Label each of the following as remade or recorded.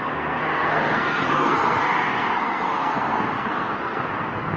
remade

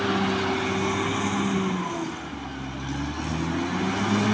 recorded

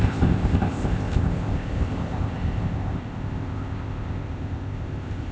remade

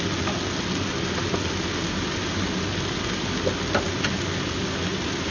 recorded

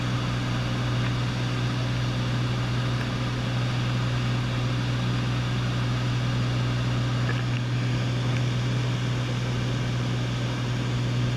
recorded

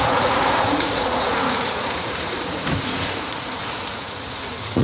remade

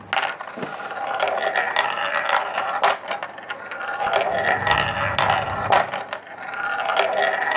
recorded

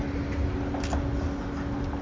recorded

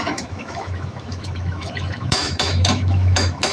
remade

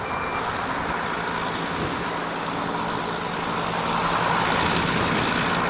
recorded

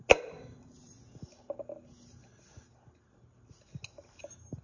recorded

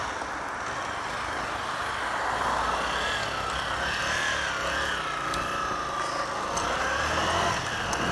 recorded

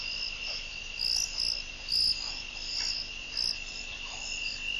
recorded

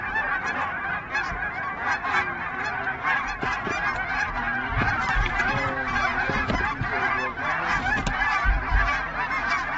recorded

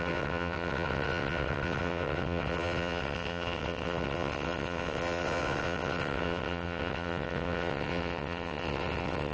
remade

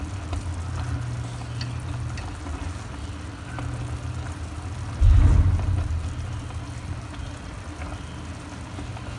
recorded